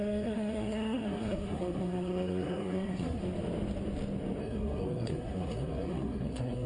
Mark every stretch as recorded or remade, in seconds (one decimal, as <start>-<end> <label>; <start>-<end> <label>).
0.0-3.2 remade; 3.2-4.4 recorded; 4.4-6.7 remade